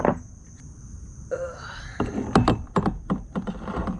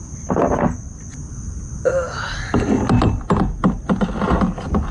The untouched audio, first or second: second